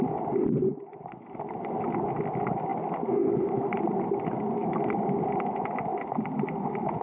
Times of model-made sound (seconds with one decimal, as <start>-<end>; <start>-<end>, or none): none